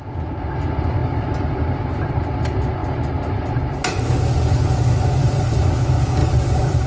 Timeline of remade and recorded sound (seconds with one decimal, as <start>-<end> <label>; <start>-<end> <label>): 0.0-1.0 recorded; 1.0-2.1 remade; 2.1-5.2 recorded; 5.2-5.7 remade; 5.7-6.2 recorded; 6.2-6.9 remade